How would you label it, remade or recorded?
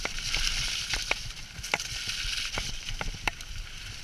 recorded